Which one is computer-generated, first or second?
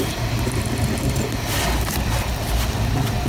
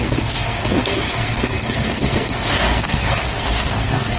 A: second